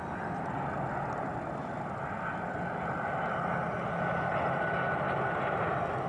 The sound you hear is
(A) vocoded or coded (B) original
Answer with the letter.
B